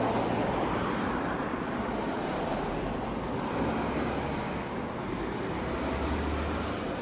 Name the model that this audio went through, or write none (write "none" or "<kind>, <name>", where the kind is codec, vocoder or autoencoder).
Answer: none